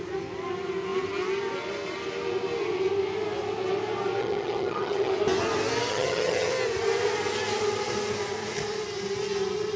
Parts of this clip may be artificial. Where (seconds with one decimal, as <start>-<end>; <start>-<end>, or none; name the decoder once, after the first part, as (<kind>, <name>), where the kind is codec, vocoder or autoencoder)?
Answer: 4.2-5.1 (vocoder, HiFi-GAN); 5.9-6.5